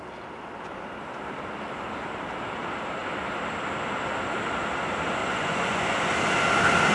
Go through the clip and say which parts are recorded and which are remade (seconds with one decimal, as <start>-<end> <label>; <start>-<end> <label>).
0.0-5.2 recorded; 5.2-6.1 remade; 6.1-6.9 recorded